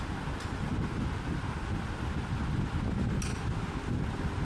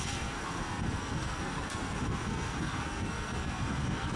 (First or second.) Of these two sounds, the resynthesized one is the second